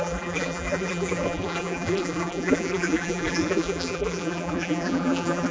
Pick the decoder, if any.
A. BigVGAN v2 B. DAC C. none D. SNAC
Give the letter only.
A